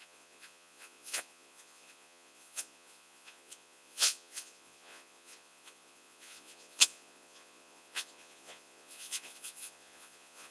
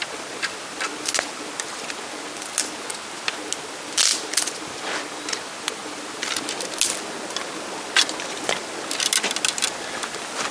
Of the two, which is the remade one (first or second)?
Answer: first